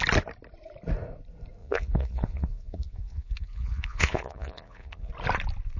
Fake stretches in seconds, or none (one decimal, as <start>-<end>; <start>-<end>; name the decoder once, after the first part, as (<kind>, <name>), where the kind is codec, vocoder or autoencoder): 1.6-5.1 (vocoder, Vocos)